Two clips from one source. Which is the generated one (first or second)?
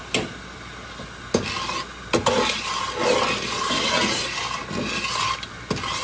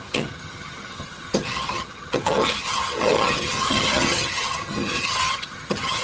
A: second